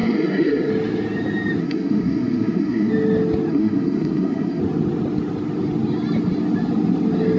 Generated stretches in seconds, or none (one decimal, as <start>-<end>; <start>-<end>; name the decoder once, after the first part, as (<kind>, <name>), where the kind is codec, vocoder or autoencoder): 0.0-0.7 (codec, SNAC); 1.6-2.9; 3.5-4.6